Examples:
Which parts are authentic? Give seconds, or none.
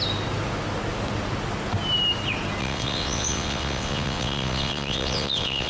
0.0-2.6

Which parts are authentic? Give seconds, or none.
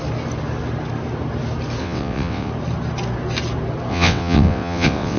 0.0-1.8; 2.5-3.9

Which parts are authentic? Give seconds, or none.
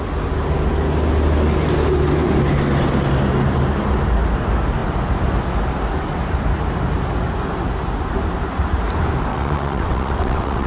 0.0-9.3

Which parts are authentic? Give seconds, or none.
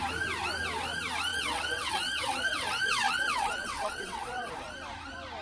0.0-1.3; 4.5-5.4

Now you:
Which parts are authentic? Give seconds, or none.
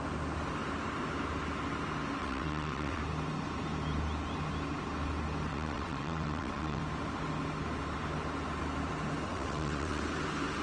0.0-2.2; 3.0-5.5; 6.8-9.3; 10.0-10.6